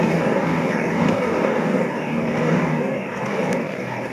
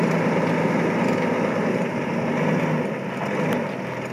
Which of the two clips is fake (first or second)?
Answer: first